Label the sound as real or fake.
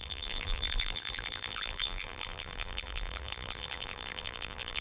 fake